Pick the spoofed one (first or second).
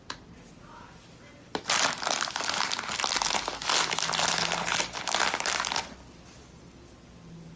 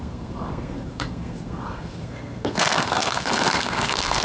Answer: second